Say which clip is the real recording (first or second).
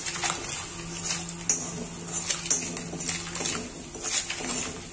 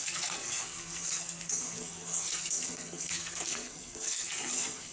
first